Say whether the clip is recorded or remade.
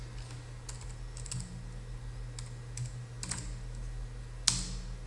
recorded